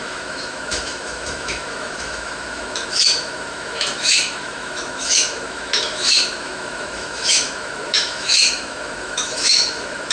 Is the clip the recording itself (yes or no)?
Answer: no